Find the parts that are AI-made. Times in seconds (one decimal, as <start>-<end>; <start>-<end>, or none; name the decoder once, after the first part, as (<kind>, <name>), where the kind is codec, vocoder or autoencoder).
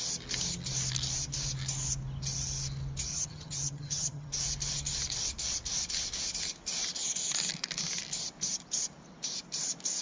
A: 3.1-4.3 (vocoder, HiFi-GAN)